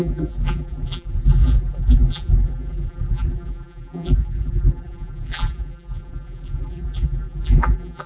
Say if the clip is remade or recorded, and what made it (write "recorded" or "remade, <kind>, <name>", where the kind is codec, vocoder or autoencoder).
remade, vocoder, BigVGAN v2